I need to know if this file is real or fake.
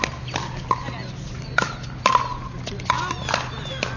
real